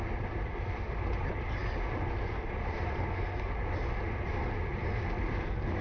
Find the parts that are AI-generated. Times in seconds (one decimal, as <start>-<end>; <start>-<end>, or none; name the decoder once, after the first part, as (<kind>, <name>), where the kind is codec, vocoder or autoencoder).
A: none